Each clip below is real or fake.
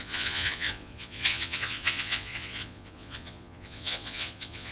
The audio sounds fake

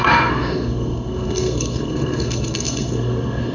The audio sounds fake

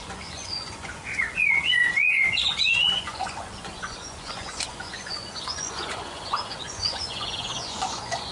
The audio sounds fake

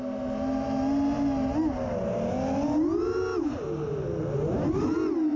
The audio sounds real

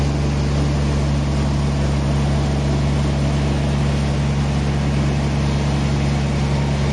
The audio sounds real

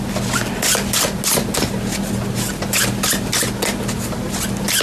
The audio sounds real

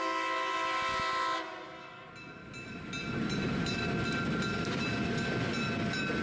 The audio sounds real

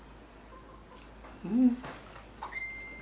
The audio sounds real